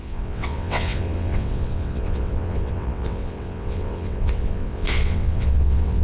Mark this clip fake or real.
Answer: fake